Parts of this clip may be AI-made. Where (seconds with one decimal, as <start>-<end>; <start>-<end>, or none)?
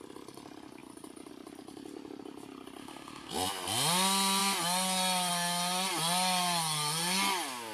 2.8-3.3